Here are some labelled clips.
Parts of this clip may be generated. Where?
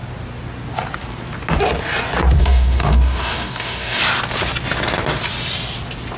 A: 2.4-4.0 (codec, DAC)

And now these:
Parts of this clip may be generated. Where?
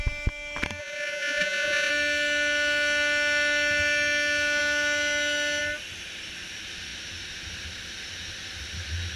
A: 0.8-1.9 (vocoder, Vocos)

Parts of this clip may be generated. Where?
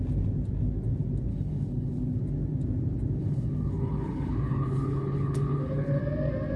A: 1.3-2.2 (codec, HILCodec); 3.2-6.0